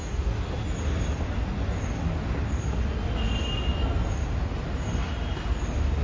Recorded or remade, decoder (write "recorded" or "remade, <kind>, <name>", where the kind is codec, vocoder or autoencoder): recorded